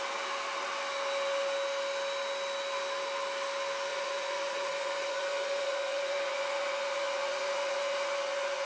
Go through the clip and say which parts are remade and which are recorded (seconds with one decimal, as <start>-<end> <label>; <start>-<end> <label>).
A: 0.0-3.9 recorded; 3.9-8.7 remade